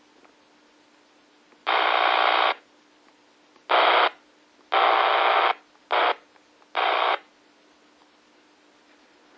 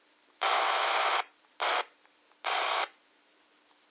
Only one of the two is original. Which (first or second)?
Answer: first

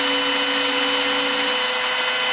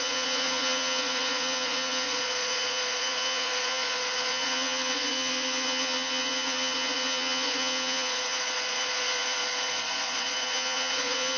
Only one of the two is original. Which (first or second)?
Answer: first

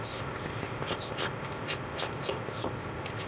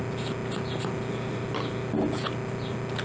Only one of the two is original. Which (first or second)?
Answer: second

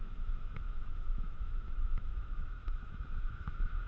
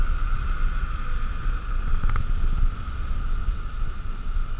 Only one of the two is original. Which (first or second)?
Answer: second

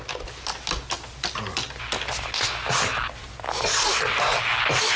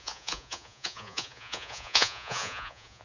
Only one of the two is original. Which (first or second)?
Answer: first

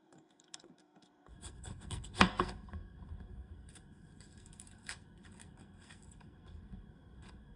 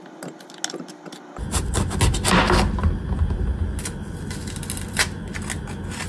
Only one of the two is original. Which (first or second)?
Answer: second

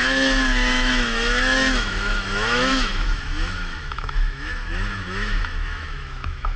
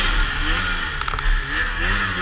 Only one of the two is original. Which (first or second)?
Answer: second